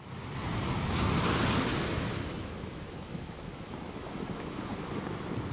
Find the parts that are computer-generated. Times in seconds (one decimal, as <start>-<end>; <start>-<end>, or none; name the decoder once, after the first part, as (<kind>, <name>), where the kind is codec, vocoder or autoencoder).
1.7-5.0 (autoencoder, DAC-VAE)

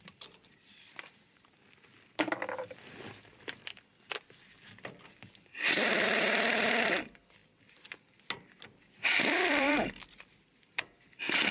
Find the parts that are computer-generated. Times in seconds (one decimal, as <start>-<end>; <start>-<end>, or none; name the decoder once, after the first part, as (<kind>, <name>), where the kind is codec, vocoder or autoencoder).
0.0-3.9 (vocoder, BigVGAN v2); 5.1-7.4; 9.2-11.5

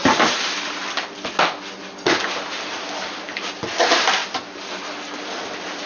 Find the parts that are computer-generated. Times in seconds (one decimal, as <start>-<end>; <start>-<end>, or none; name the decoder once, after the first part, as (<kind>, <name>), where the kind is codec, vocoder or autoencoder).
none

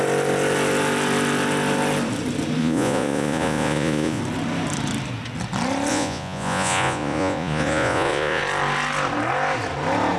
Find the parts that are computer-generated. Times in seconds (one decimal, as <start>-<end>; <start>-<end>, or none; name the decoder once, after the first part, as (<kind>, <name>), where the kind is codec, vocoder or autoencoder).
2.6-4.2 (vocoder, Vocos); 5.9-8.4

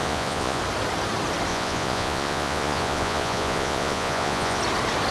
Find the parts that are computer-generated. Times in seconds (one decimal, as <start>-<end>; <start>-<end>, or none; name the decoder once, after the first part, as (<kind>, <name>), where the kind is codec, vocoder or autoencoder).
0.0-0.6 (vocoder, Vocos); 1.5-4.6

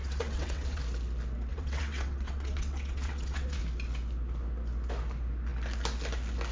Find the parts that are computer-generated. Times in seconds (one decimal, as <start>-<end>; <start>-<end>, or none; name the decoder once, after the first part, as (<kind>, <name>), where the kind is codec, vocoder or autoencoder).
0.0-0.8 (vocoder, WaveNeXt); 1.5-3.6

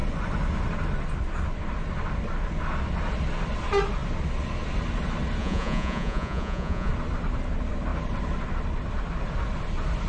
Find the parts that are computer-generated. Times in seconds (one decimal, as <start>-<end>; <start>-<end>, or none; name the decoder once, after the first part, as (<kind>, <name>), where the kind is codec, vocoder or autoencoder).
5.4-6.9 (vocoder, Vocos)